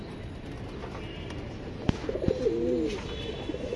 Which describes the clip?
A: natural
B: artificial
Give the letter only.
A